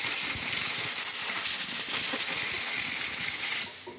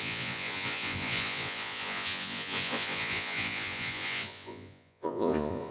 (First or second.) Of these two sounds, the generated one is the second